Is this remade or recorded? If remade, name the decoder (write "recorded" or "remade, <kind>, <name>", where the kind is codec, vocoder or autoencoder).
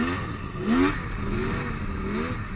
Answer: recorded